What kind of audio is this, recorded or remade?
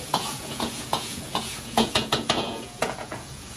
remade